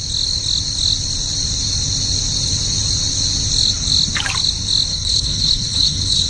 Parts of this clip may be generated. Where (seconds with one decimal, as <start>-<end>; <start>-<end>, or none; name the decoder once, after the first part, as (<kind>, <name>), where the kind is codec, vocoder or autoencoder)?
4.9-6.3 (codec, HILCodec)